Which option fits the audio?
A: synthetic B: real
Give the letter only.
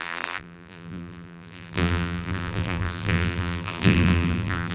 A